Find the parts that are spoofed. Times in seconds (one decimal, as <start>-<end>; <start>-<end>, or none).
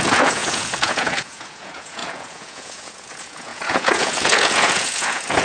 0.0-5.4